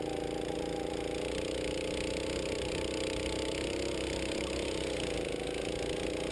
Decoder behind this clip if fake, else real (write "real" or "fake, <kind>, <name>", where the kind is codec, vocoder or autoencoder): real